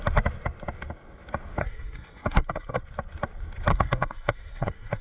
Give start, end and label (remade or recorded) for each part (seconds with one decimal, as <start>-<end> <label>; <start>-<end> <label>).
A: 0.0-1.6 recorded; 1.6-2.8 remade; 2.8-3.7 recorded; 3.7-5.0 remade